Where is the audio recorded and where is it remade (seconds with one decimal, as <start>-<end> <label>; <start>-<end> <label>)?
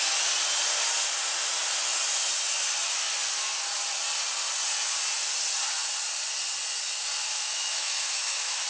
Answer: 0.0-7.2 recorded; 7.2-8.7 remade